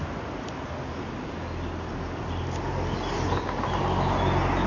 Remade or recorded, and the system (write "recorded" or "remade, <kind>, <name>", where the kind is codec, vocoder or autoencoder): recorded